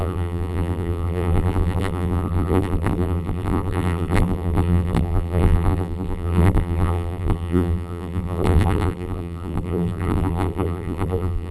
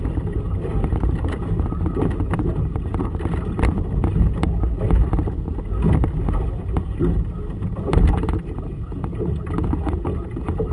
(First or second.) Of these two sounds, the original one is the second